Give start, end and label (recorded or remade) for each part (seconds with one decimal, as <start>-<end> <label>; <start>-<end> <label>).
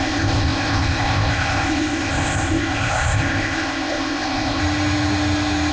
0.0-4.6 remade; 4.6-5.7 recorded